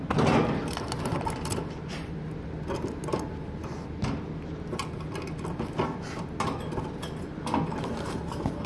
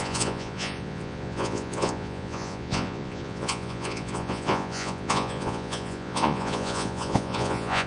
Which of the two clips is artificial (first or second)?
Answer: second